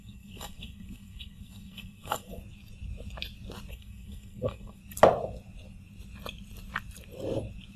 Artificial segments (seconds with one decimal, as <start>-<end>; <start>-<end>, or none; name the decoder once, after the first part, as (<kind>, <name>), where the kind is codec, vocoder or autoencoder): 0.0-2.4 (codec, SNAC); 3.7-4.8